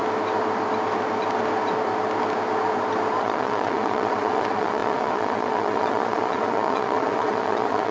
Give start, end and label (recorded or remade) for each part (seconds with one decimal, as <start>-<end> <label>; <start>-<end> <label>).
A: 0.0-3.2 recorded; 3.2-7.9 remade